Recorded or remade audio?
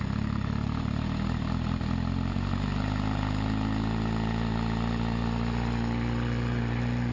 recorded